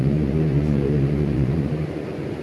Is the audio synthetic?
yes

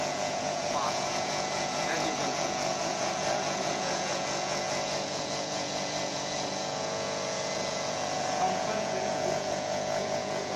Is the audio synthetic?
yes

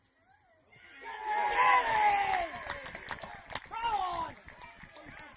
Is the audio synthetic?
no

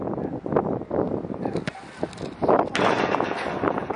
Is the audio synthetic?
no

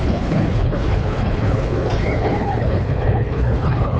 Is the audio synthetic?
yes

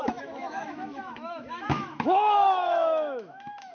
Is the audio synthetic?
yes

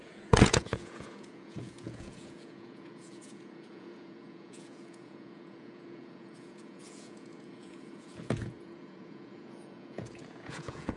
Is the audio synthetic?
yes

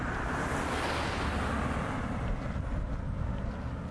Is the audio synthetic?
no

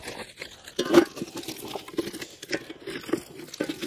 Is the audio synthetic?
no